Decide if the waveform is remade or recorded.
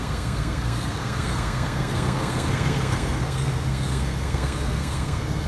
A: remade